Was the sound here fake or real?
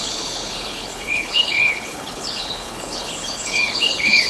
fake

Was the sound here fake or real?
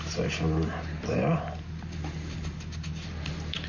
real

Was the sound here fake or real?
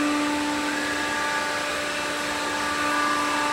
real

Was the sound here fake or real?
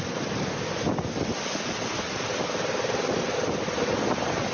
real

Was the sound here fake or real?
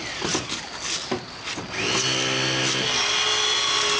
real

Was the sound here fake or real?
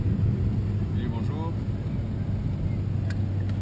real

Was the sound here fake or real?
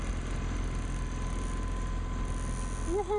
real